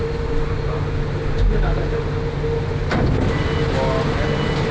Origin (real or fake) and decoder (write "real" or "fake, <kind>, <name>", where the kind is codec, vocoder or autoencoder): real